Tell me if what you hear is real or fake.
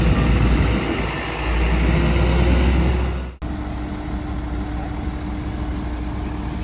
real